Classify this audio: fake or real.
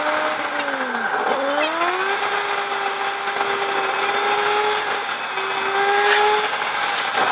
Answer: real